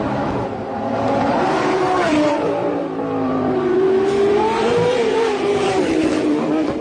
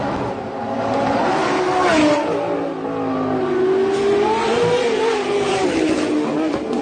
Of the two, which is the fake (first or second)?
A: first